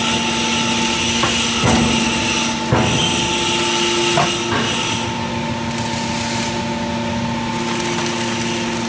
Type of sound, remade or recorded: recorded